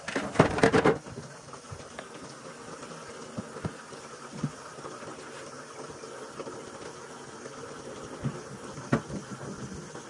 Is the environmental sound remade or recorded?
recorded